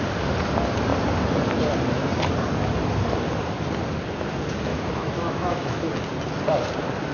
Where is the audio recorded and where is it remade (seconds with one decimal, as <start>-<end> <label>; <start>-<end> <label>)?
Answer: 0.0-4.7 recorded; 4.7-5.9 remade; 5.9-7.1 recorded